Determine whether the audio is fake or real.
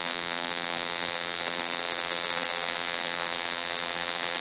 fake